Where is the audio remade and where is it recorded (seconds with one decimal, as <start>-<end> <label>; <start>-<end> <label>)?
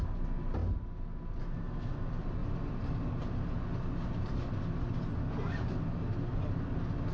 0.0-7.1 recorded